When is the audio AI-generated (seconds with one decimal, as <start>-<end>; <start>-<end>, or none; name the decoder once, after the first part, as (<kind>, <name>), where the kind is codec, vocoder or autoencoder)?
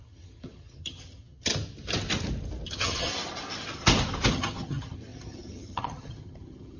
0.0-1.5 (vocoder, HiFi-GAN); 2.7-3.1; 4.3-6.8